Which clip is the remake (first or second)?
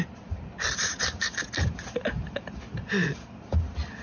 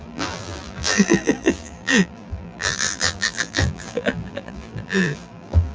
second